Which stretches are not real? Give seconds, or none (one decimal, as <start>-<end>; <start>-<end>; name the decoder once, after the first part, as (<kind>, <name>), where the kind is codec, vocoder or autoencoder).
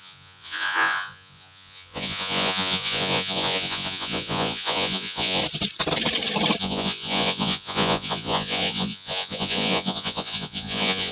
0.0-5.4 (vocoder, Vocos); 6.6-11.1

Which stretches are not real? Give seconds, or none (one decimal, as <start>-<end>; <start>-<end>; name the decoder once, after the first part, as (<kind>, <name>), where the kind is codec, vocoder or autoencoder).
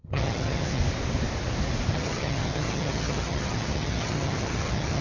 0.0-0.8 (vocoder, HiFi-GAN); 1.9-5.0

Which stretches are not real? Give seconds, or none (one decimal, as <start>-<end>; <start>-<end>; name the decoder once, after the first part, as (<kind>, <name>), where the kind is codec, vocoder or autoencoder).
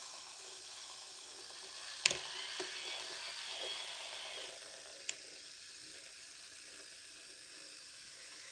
0.0-1.4 (autoencoder, DAC-VAE); 7.7-8.5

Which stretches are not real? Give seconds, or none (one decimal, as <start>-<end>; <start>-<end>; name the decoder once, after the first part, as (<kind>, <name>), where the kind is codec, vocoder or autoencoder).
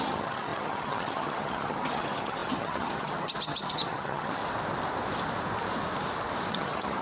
0.0-4.4 (vocoder, HiFi-GAN); 6.5-7.0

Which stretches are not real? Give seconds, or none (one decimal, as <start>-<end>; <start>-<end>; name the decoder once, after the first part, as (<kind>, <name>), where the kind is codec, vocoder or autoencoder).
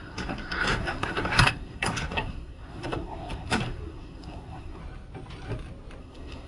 0.0-4.8 (codec, SNAC); 6.0-6.5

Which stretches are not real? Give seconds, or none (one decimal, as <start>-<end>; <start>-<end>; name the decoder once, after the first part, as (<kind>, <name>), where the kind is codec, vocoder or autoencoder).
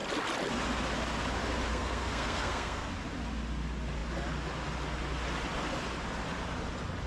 1.7-2.9 (codec, SNAC)